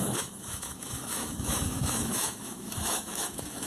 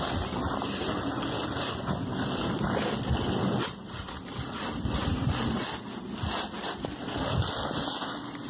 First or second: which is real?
second